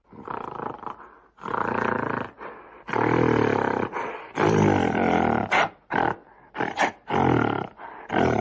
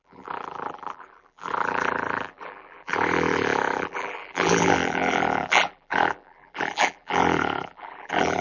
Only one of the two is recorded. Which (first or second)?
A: first